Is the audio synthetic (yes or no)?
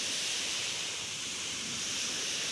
yes